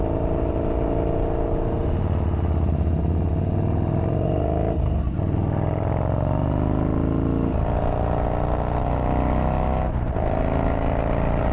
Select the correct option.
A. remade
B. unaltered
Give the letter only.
B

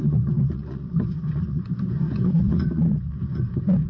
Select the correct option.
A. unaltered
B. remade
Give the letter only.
B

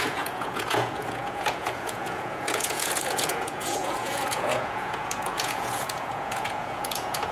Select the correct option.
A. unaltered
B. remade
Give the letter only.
B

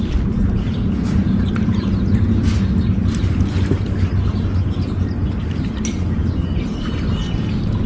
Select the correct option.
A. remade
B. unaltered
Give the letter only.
B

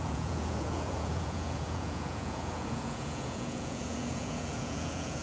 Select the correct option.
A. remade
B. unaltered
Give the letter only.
A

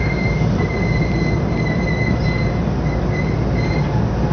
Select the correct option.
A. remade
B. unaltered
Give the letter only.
B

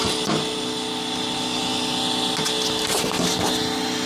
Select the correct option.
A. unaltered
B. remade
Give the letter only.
A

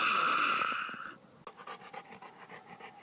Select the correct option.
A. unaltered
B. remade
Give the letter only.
A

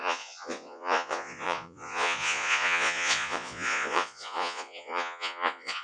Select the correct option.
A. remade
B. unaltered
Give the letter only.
A